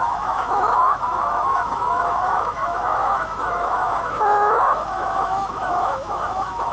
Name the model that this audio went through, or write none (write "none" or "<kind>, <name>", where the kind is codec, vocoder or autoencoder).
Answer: autoencoder, DAC-VAE